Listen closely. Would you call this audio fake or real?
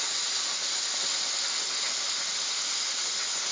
real